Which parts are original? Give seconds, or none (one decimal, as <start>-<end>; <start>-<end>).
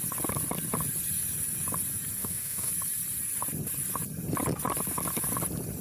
0.0-2.2; 2.7-5.8